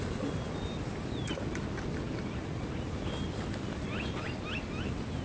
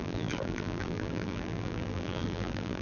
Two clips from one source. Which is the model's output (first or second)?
second